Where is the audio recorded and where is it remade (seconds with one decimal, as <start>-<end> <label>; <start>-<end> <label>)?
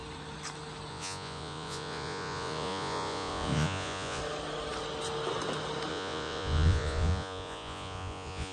0.0-0.9 recorded; 0.9-4.2 remade; 4.2-5.9 recorded; 5.9-8.5 remade